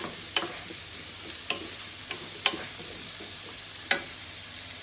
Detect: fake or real fake